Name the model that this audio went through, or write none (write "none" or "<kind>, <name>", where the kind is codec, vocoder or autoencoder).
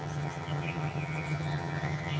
vocoder, HiFi-GAN